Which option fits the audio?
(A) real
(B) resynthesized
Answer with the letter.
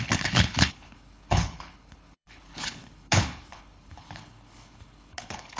B